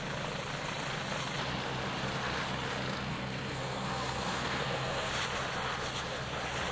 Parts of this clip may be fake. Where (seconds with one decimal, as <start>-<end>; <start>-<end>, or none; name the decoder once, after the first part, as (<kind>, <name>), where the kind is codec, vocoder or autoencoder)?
3.1-5.1 (codec, SNAC)